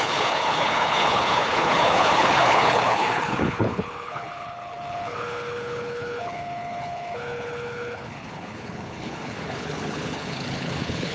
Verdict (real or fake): fake